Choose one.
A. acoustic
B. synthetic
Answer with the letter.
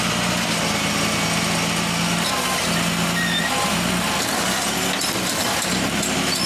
A